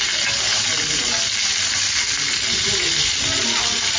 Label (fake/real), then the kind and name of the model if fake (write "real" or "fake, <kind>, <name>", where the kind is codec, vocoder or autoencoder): real